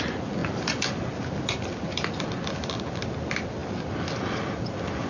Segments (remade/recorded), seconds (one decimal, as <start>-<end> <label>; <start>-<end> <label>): 0.0-5.1 recorded